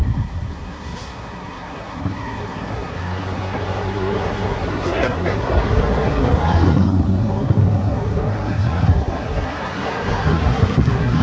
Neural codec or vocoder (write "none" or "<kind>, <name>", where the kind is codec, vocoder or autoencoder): codec, SNAC